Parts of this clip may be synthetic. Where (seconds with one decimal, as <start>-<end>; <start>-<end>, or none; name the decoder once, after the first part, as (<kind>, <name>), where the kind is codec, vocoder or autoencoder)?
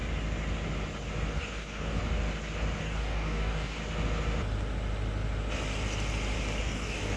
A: 1.3-2.0 (codec, DAC); 2.8-3.8; 6.6-7.2